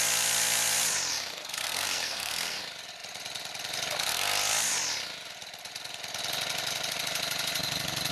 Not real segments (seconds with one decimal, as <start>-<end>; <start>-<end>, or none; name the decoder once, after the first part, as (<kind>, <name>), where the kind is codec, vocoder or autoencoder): 1.1-2.6 (codec, SNAC)

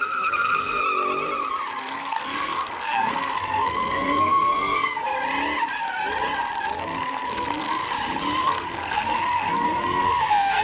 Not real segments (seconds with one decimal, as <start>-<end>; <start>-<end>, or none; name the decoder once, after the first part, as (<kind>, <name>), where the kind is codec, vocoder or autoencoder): 0.0-0.8 (codec, SNAC); 1.8-5.1; 6.8-7.8; 8.4-10.6